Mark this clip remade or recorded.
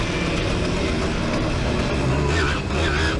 recorded